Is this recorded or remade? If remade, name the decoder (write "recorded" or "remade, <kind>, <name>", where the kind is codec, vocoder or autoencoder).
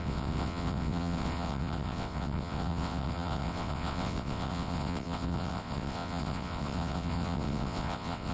remade, vocoder, WaveNeXt